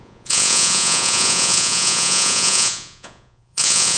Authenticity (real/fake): fake